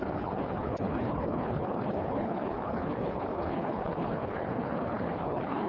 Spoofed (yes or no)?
yes